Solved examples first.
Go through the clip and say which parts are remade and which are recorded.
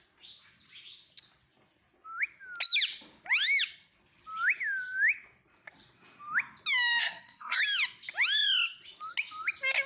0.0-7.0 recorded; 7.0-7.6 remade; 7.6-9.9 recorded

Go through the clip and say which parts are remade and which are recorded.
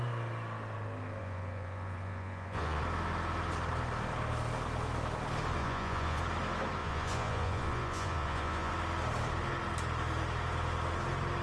0.0-1.2 recorded; 1.2-2.8 remade; 2.8-5.6 recorded; 5.6-6.2 remade; 6.2-6.8 recorded; 6.8-8.7 remade; 8.7-11.4 recorded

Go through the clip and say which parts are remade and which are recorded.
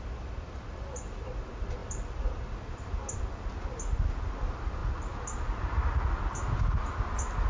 0.0-7.5 recorded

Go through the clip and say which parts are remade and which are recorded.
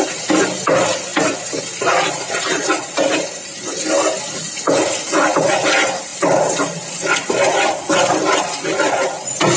0.0-1.1 recorded; 1.1-3.1 remade; 3.1-6.1 recorded; 6.1-8.2 remade; 8.2-9.6 recorded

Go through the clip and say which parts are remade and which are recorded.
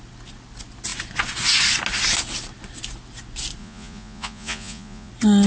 0.0-3.6 recorded; 3.6-5.1 remade; 5.1-5.5 recorded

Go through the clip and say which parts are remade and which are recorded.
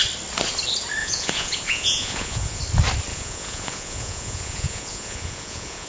0.0-1.0 recorded; 1.0-2.6 remade; 2.6-3.1 recorded; 3.1-5.9 remade